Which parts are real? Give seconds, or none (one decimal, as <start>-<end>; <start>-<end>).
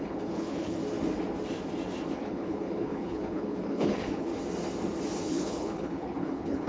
0.8-2.1; 4.3-5.3